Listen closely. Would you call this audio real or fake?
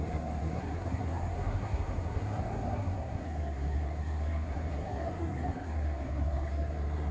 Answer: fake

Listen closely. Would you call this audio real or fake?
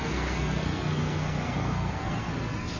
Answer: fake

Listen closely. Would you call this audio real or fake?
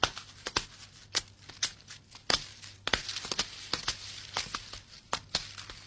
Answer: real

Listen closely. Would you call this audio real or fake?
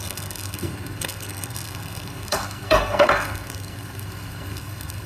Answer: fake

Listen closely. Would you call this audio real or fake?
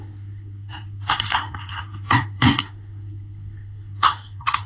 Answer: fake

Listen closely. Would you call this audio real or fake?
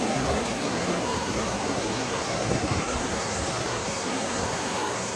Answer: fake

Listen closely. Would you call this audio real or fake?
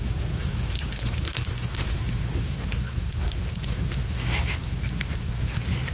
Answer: fake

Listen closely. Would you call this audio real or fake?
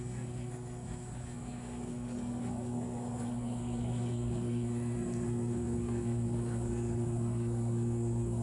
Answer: fake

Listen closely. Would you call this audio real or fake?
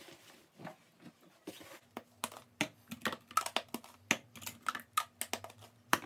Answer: real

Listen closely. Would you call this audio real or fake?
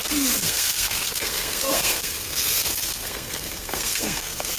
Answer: fake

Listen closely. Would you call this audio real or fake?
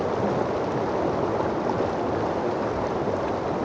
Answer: real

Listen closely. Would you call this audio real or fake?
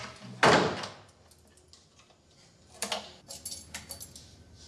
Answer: real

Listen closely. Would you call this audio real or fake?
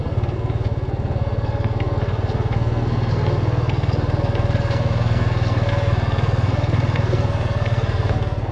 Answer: fake